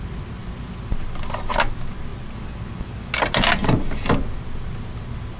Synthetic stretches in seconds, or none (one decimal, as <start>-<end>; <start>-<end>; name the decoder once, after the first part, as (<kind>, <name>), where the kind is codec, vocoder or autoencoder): none